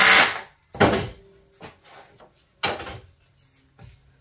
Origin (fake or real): real